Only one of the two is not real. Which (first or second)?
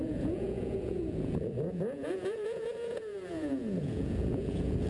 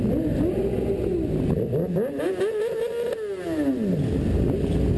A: first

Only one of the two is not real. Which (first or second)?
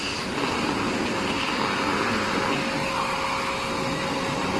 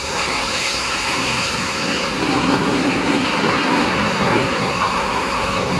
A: second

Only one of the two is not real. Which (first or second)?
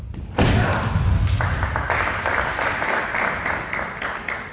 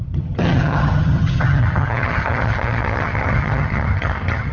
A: second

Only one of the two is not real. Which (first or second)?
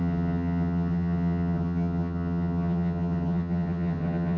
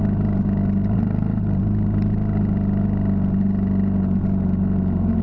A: first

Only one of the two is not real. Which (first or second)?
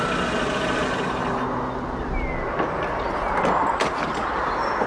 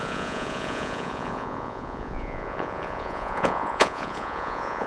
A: second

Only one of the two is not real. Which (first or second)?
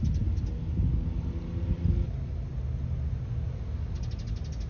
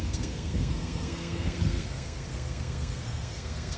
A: second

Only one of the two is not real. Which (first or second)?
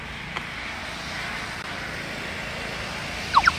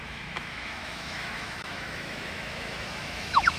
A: second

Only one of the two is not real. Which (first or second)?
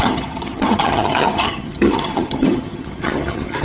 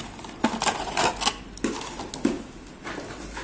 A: first